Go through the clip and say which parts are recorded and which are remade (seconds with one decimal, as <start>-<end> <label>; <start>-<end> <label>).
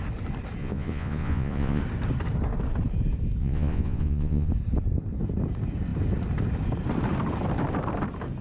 0.0-0.6 recorded; 0.6-1.8 remade; 1.8-3.4 recorded; 3.4-4.5 remade; 4.5-8.4 recorded